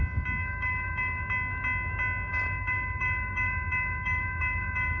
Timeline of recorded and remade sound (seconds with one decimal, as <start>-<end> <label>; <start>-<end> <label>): 0.0-0.4 recorded; 0.4-1.2 remade; 1.2-2.3 recorded; 2.3-5.0 remade